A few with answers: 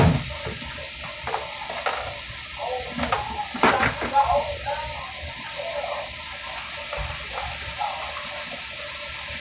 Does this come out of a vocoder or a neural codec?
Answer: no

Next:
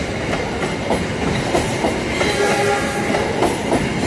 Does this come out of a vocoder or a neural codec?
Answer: no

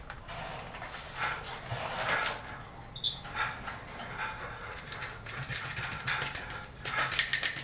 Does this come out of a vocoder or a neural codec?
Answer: no